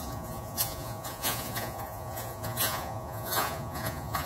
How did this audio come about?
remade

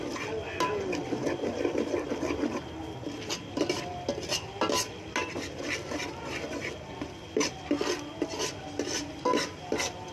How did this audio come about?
recorded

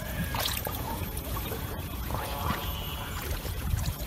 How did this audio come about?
remade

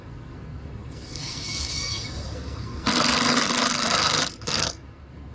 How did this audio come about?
remade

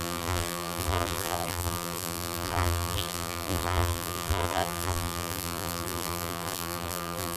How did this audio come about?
remade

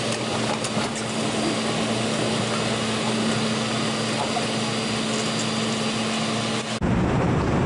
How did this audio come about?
recorded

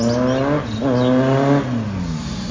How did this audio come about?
recorded